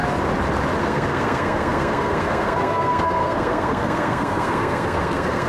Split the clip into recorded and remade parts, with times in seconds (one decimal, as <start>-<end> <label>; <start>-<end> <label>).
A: 0.0-0.8 recorded; 0.8-5.5 remade